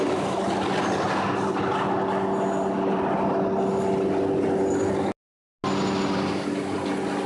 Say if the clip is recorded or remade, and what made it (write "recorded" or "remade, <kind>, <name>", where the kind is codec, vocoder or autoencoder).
recorded